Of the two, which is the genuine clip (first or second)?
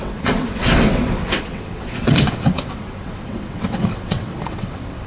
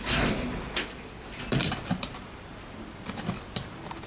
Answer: second